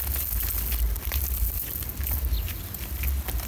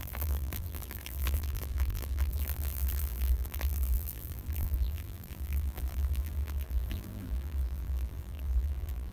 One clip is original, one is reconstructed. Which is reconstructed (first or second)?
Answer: second